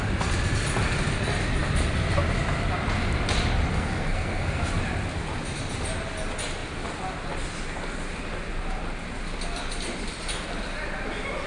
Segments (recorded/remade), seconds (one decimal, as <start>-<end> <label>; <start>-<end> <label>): 0.0-3.7 recorded; 3.7-4.6 remade; 4.6-11.5 recorded